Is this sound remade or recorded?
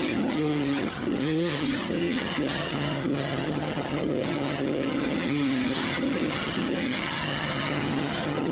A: remade